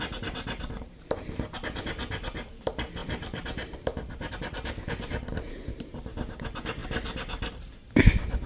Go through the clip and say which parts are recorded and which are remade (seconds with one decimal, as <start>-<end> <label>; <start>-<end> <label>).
0.0-6.8 remade; 6.8-7.5 recorded; 7.5-8.5 remade